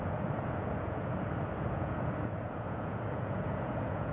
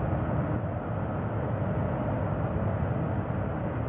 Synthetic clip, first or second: first